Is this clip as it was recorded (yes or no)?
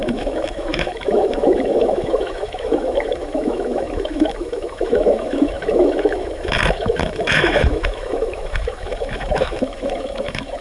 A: no